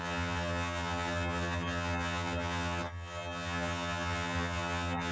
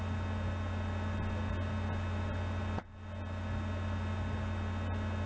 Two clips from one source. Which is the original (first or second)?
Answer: second